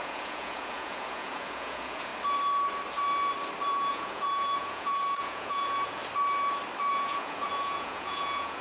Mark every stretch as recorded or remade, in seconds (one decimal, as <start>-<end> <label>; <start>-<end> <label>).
0.0-2.1 remade; 2.1-3.7 recorded; 3.7-6.0 remade; 6.0-6.9 recorded; 6.9-8.6 remade